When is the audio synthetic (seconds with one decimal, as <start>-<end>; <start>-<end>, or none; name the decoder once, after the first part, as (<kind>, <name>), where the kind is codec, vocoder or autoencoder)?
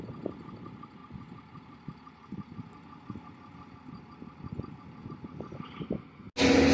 none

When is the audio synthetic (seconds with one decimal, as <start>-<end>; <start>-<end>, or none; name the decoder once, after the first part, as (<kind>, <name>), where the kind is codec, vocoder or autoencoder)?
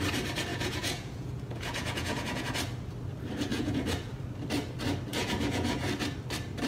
0.5-2.5 (vocoder, Vocos); 3.5-4.1; 5.1-5.8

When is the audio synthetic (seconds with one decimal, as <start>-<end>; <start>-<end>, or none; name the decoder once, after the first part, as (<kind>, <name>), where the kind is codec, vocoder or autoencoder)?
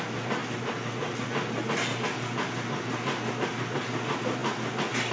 none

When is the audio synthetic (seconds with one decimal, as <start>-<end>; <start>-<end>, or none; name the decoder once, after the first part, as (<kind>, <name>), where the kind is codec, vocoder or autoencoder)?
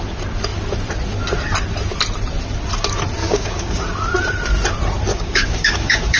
3.2-3.8 (codec, DAC); 5.1-6.2